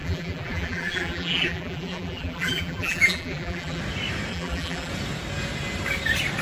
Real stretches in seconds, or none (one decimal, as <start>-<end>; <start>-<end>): 3.8-4.3; 4.9-6.4

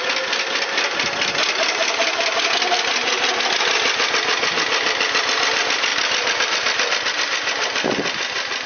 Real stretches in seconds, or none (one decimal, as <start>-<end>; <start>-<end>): 0.0-5.9

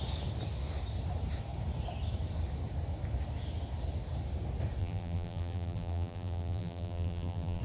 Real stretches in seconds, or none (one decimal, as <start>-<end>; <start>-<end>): 0.0-4.8

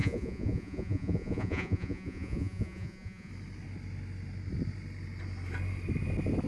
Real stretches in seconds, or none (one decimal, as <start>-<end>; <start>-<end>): 3.3-6.5

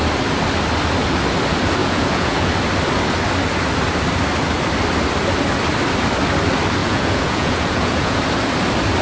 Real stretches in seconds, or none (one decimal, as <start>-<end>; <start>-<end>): 0.0-1.8; 2.5-6.8; 8.2-9.0

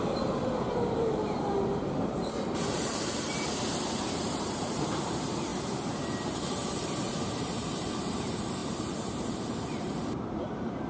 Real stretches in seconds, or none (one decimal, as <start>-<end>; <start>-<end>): 5.5-6.5

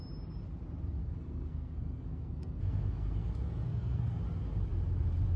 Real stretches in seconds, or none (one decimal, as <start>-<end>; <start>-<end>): 0.0-1.0; 4.2-5.4